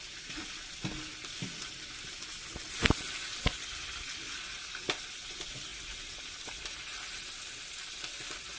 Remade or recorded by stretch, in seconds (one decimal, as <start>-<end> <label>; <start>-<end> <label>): 0.0-8.6 recorded